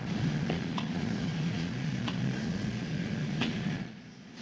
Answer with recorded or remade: remade